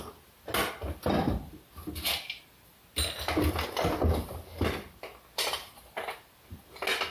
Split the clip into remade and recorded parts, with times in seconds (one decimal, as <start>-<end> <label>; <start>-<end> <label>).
0.0-7.1 recorded